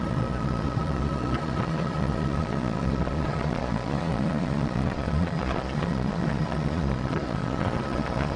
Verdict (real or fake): fake